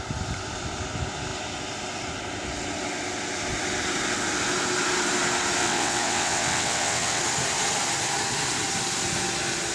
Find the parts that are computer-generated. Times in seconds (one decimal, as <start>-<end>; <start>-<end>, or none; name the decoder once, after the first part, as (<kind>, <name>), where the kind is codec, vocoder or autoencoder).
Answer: 5.6-7.2 (vocoder, WaveNeXt)

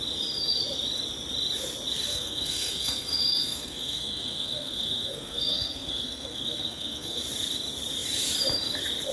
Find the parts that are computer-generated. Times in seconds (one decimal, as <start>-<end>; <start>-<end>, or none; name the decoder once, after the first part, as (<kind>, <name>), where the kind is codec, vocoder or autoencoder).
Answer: 2.1-7.2 (codec, SNAC)

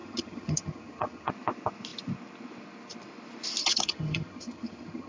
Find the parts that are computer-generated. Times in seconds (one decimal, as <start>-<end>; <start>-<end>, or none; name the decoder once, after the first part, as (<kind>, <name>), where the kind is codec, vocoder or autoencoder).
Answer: 0.0-1.3 (vocoder, HiFi-GAN); 3.6-5.1

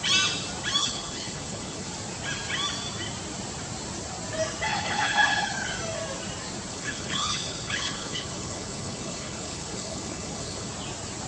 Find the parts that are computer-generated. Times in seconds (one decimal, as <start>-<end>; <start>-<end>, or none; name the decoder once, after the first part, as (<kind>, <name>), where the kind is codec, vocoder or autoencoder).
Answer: 0.8-1.9 (codec, HILCodec); 4.7-5.7; 6.7-10.7

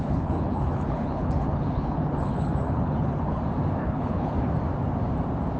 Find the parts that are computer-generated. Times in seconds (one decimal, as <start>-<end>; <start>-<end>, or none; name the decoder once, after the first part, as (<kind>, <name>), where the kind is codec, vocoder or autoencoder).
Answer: 0.0-3.4 (codec, HILCodec); 3.8-4.3